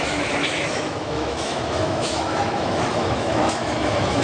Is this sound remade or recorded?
remade